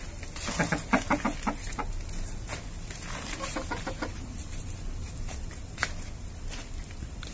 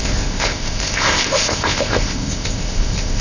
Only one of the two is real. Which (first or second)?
first